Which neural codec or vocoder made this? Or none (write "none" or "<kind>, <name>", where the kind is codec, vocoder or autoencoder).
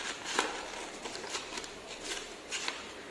none